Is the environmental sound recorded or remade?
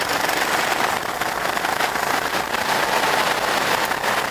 recorded